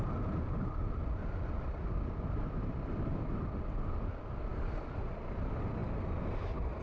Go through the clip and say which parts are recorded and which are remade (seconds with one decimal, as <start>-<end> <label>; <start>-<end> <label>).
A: 0.0-6.8 recorded